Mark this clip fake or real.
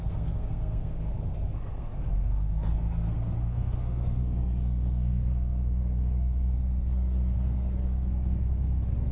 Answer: fake